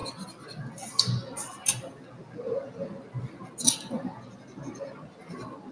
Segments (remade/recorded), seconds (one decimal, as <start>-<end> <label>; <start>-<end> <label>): 0.0-5.7 recorded